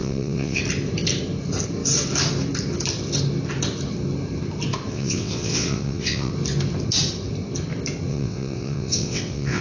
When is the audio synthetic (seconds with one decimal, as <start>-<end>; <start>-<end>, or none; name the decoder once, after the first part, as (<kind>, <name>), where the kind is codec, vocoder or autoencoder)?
0.0-0.6 (vocoder, WaveNeXt); 4.9-6.3; 8.1-9.6